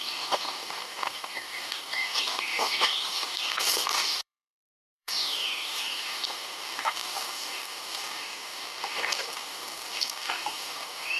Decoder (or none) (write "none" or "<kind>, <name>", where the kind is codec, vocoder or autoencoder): codec, DAC